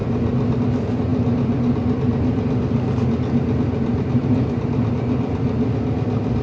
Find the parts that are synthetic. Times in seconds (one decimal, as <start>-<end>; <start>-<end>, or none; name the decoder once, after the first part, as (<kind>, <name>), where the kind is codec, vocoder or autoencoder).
none